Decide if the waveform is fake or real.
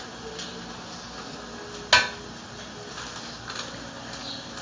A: real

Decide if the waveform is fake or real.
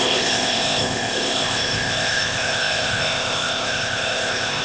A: fake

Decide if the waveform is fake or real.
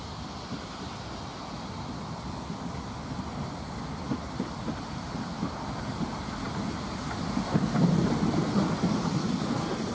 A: real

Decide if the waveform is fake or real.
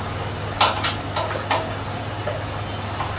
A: real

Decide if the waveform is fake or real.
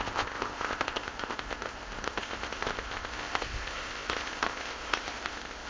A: fake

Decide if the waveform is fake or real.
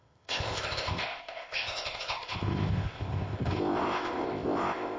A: fake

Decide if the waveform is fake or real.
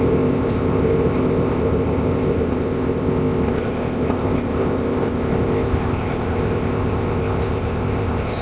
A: fake